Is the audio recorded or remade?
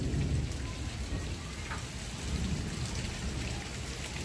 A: recorded